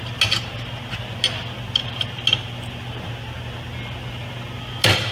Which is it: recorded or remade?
recorded